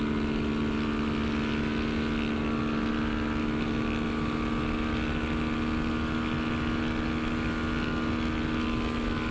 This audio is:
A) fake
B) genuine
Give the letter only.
B